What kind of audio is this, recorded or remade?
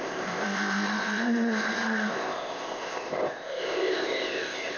remade